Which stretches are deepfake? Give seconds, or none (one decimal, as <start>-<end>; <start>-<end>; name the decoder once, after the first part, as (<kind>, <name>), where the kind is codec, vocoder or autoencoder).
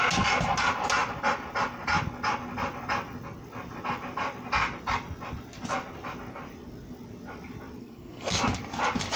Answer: 7.8-8.4 (codec, SNAC)